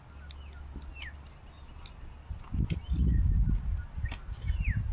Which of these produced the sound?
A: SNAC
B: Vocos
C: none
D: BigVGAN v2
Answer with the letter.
C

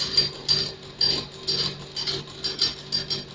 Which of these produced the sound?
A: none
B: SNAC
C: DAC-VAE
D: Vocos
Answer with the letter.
A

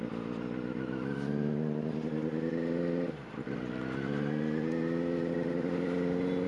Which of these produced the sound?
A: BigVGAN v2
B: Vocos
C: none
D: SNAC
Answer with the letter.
C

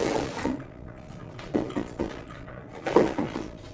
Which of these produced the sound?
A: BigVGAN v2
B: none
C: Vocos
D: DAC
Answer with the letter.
C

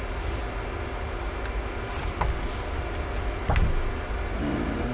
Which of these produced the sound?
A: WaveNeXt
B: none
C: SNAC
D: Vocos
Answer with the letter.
B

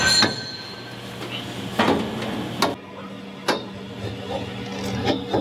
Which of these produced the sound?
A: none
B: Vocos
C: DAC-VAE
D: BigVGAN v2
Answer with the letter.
A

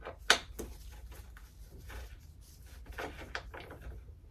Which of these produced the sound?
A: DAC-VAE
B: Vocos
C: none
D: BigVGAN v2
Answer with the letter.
C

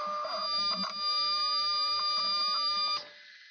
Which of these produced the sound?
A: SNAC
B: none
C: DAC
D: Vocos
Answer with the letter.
B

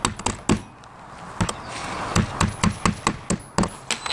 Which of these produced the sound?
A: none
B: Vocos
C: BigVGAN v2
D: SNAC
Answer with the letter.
A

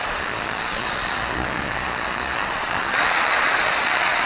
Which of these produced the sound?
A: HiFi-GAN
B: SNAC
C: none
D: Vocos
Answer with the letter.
D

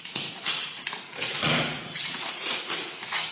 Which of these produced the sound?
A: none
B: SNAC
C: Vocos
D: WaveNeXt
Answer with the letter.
C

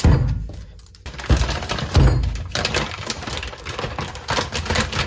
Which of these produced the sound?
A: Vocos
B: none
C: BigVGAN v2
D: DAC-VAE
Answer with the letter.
B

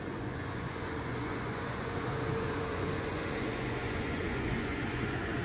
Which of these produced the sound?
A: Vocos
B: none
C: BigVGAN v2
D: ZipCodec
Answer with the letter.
A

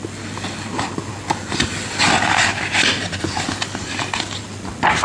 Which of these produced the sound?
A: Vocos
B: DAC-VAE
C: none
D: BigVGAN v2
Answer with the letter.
C